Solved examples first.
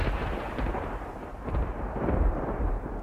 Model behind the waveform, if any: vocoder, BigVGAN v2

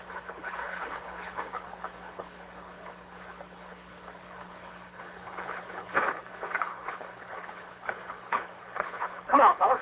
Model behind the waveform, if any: codec, HILCodec